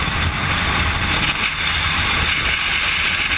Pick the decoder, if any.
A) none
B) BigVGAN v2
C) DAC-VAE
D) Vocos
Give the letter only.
A